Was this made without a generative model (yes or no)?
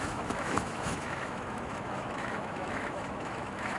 no